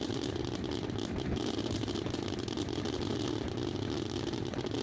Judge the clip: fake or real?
real